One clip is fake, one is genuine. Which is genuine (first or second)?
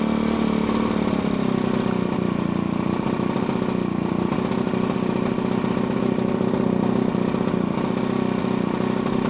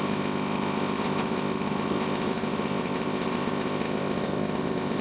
first